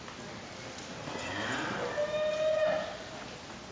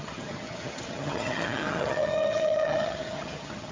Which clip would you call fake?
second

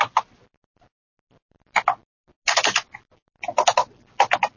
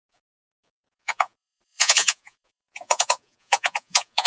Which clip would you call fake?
second